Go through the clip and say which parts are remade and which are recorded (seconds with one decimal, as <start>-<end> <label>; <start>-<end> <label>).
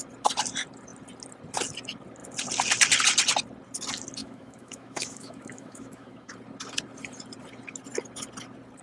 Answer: 0.0-4.2 recorded; 4.2-6.3 remade; 6.3-8.8 recorded